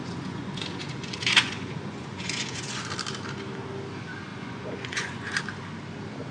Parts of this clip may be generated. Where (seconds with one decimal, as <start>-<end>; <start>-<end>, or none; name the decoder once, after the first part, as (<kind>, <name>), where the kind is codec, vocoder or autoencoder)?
0.0-2.8 (vocoder, Vocos); 4.3-5.4